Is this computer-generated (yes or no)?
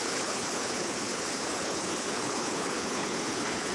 yes